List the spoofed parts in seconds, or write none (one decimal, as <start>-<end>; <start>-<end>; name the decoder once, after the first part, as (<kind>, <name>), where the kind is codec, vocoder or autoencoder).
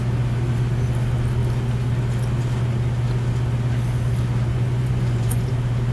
4.5-5.5 (vocoder, Vocos)